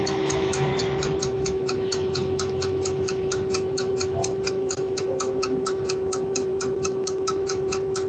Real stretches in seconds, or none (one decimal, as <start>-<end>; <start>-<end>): 0.7-1.2